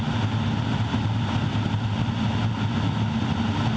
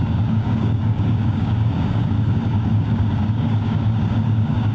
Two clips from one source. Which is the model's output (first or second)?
second